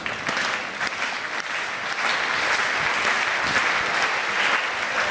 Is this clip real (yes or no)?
yes